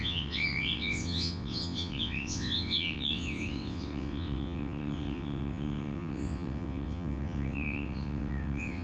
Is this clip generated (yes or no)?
yes